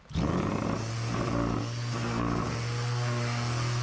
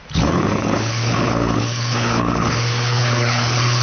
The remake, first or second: second